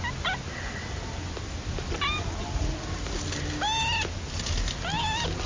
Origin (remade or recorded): recorded